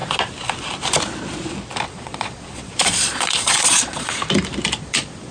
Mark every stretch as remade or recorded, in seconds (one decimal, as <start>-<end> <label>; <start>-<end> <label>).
0.0-1.9 recorded; 1.9-4.2 remade; 4.2-4.8 recorded; 4.8-5.3 remade